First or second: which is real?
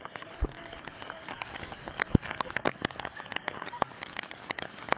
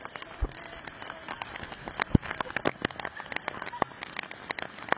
second